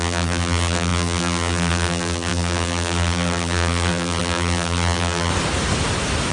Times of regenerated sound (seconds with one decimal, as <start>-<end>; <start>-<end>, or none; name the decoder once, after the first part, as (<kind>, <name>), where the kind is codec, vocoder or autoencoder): 0.0-5.3 (vocoder, BigVGAN v2)